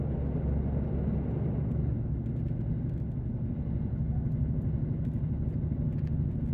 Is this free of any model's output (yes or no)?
yes